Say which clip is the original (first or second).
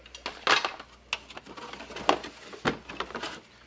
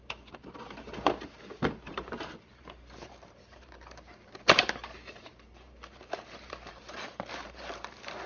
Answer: first